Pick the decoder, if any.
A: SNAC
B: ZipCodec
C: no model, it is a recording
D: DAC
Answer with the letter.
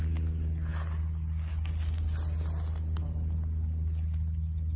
C